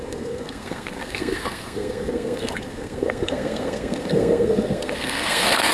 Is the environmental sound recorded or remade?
remade